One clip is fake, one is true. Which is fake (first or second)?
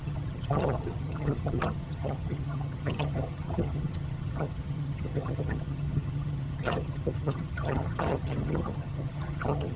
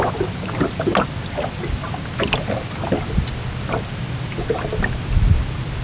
first